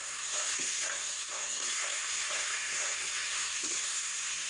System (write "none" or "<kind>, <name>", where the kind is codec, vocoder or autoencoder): codec, SNAC